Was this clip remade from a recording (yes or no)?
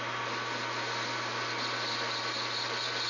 no